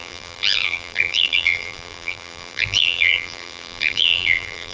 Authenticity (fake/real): fake